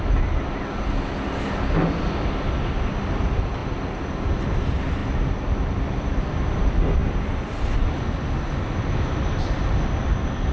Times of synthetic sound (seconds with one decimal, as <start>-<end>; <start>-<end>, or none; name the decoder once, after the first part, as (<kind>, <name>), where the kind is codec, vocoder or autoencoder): none